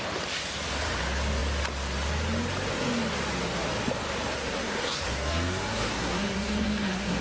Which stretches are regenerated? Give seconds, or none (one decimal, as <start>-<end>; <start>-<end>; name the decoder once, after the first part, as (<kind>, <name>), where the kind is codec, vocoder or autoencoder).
4.4-7.2 (codec, SNAC)